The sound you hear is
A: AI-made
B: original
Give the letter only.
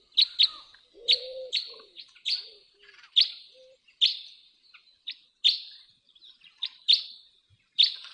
B